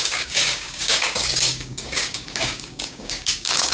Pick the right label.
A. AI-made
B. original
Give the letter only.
A